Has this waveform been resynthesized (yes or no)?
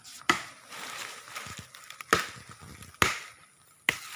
no